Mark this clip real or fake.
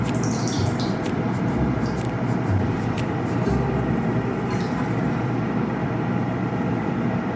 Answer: fake